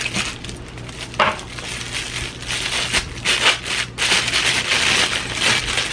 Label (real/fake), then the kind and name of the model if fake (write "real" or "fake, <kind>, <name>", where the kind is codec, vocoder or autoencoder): real